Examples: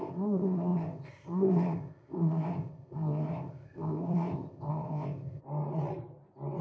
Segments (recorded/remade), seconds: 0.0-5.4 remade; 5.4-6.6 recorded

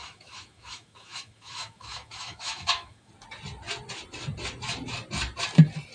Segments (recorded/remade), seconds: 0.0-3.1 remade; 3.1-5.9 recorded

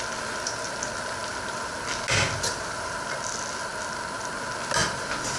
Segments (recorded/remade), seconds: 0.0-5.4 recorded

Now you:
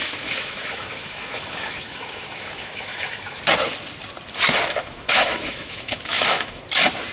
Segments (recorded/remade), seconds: 0.0-3.4 remade; 3.4-4.8 recorded; 4.8-6.6 remade; 6.6-7.1 recorded

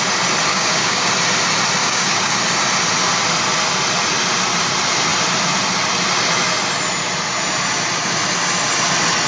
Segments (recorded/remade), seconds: 0.0-0.5 recorded; 0.5-1.1 remade; 1.1-1.8 recorded; 1.8-2.3 remade; 2.3-9.3 recorded

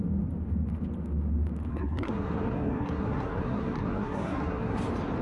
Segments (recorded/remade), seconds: 0.0-1.7 recorded; 1.7-4.8 remade; 4.8-5.2 recorded